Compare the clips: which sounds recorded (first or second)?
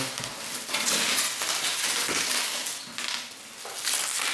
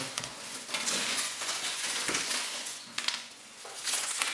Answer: first